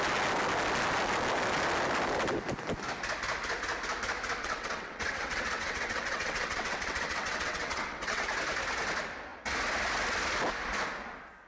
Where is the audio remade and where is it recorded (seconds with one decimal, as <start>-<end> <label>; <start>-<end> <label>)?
0.0-4.4 recorded; 4.4-8.3 remade; 8.3-11.5 recorded